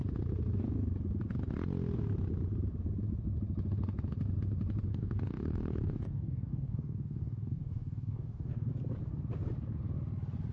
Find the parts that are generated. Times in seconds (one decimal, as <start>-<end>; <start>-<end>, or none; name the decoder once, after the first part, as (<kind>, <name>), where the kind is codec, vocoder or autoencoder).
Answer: 4.9-8.7 (codec, DAC)